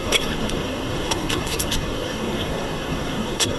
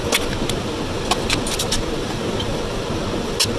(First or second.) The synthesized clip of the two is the first